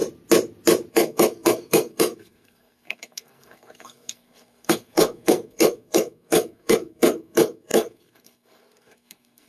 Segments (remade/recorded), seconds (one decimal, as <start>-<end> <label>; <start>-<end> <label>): 0.0-0.9 recorded; 0.9-9.5 remade